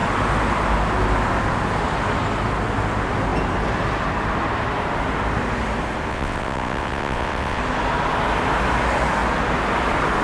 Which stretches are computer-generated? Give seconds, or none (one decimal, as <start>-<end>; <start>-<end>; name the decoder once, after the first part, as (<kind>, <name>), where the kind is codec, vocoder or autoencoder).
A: 6.1-7.6 (vocoder, WaveNeXt)